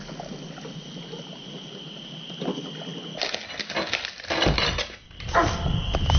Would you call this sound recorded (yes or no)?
yes